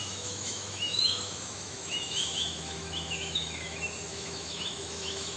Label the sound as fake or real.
fake